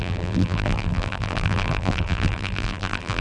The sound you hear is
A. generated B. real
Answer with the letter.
A